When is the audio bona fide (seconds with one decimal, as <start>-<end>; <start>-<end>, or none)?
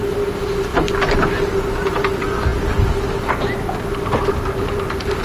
0.0-3.9